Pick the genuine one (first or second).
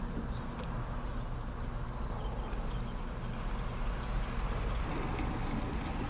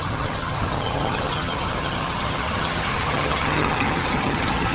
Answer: first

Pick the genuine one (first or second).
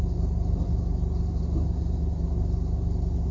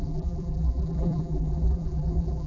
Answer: first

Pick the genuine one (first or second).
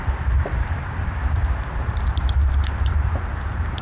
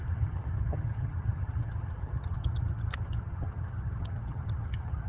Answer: first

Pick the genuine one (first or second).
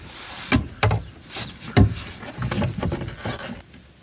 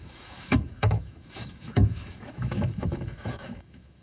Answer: first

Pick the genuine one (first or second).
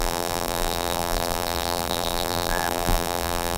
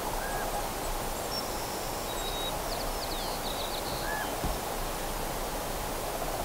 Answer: second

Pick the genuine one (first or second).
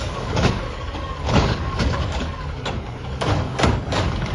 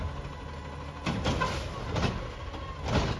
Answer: second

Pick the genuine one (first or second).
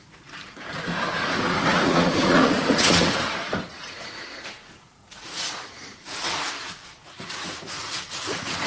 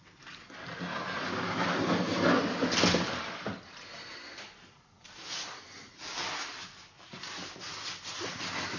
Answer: second